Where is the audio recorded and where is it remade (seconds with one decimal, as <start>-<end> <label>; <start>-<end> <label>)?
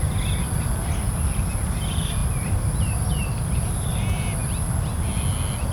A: 0.0-2.2 recorded; 2.2-3.7 remade; 3.7-5.7 recorded